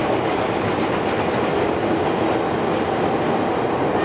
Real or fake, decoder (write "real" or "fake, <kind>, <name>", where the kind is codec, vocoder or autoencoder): real